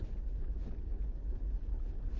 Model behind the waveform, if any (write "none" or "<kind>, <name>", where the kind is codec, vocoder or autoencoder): none